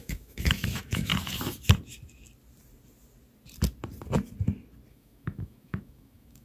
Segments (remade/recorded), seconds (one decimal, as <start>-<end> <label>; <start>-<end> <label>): 0.0-1.1 remade; 1.1-4.9 recorded; 4.9-6.4 remade